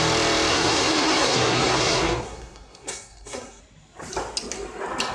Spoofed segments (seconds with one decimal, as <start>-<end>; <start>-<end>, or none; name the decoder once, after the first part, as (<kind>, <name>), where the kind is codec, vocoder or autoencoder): 0.5-3.6 (codec, SNAC)

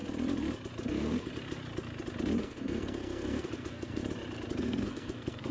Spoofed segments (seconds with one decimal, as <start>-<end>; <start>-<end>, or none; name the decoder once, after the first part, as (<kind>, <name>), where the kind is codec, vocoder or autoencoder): 0.9-1.3 (codec, SNAC); 2.4-4.0; 4.6-5.5

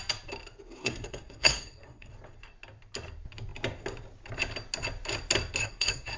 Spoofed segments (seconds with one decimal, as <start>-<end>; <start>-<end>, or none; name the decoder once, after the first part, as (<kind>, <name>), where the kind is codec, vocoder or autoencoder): 0.8-2.1 (codec, SNAC); 5.6-6.2

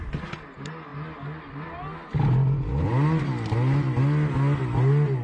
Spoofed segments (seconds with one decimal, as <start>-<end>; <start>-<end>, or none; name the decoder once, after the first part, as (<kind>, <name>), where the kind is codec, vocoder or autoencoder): none

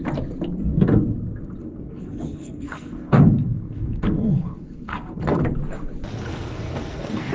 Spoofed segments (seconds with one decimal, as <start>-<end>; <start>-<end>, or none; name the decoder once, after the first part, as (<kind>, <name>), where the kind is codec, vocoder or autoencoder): 1.6-5.4 (codec, SNAC); 6.3-7.3